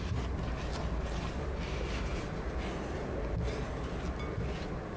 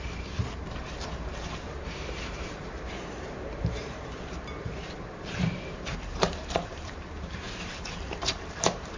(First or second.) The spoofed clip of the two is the second